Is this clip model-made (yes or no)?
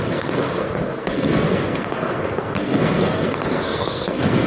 yes